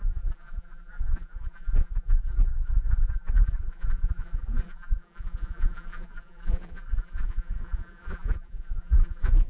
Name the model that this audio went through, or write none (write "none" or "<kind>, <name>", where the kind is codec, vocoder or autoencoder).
vocoder, BigVGAN v2